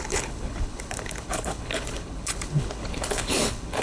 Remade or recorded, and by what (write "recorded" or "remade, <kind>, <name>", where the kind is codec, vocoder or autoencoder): remade, codec, HILCodec